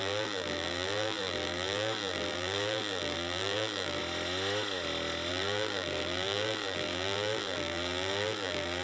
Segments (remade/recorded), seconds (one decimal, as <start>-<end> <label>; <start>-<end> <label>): 0.0-4.0 remade; 4.0-5.3 recorded; 5.3-8.8 remade